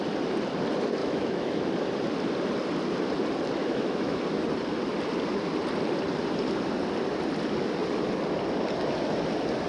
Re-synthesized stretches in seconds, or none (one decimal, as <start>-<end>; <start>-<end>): 1.0-1.7; 3.6-4.2